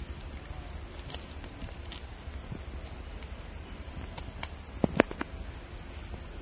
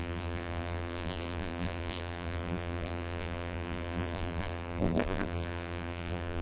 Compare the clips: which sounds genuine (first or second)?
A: first